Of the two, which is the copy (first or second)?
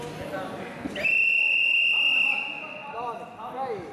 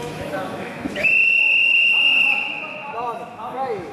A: second